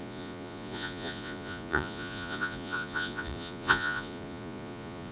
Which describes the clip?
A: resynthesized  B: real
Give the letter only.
A